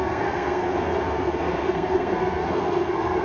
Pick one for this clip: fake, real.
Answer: fake